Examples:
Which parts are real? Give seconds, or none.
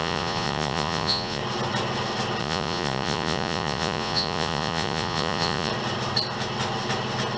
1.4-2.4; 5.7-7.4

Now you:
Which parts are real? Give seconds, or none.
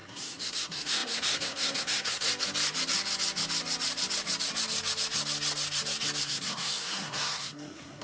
2.3-6.2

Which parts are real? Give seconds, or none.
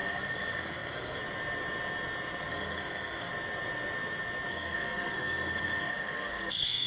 1.2-2.5; 3.3-4.5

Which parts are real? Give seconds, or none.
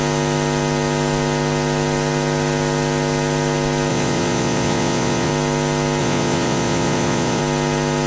0.0-3.9; 5.3-6.0; 7.4-8.1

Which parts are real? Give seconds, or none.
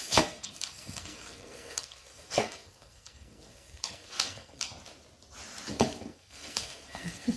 4.7-5.7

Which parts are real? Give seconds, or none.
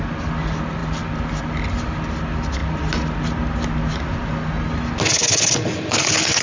0.0-6.4